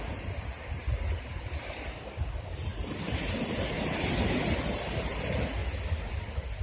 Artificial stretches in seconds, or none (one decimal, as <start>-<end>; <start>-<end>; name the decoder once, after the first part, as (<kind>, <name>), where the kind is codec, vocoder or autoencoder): 0.0-6.6 (vocoder, BigVGAN v2)